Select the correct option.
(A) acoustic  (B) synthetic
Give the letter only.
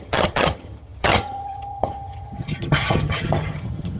B